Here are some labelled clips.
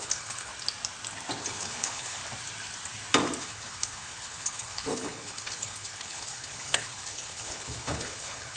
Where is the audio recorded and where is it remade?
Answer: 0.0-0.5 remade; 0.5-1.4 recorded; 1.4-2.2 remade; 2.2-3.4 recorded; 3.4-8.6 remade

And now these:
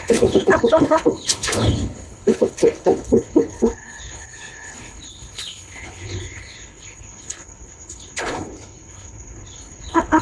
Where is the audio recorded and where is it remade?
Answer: 0.0-10.2 remade

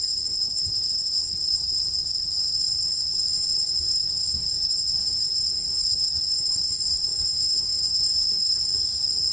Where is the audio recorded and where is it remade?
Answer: 0.0-8.7 remade; 8.7-9.3 recorded

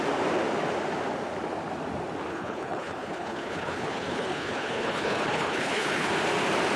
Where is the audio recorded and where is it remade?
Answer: 0.0-2.3 recorded; 2.3-6.1 remade; 6.1-6.8 recorded

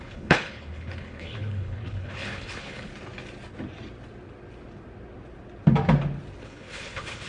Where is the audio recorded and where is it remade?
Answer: 0.0-2.9 remade; 2.9-6.4 recorded; 6.4-7.3 remade